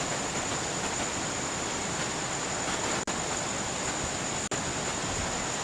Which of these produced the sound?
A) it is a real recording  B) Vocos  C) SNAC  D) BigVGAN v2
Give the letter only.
A